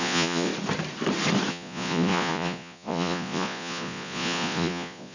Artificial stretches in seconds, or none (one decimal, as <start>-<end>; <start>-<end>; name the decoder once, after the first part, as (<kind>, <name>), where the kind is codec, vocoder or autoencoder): 0.0-0.5 (vocoder, Vocos); 1.5-5.1